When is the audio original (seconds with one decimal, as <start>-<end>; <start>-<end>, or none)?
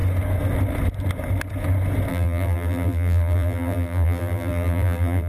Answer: 0.0-2.1